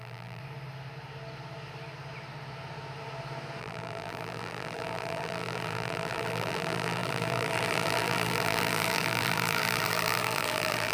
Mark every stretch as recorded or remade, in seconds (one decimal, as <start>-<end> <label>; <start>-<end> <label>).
0.0-0.4 remade; 0.4-3.6 recorded; 3.6-10.9 remade